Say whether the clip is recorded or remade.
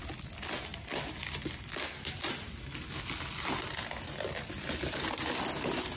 recorded